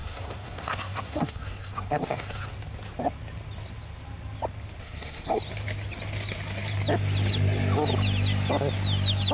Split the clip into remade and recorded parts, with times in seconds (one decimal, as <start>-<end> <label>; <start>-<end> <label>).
0.0-2.5 remade; 2.5-4.8 recorded; 4.8-5.4 remade; 5.4-9.3 recorded